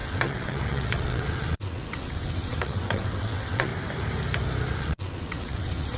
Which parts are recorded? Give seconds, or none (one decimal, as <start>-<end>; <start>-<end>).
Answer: 3.7-4.8